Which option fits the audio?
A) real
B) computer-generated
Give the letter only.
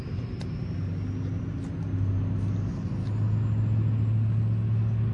A